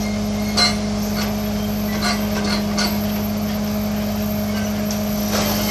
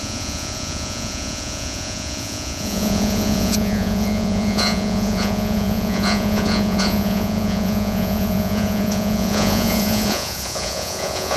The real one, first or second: first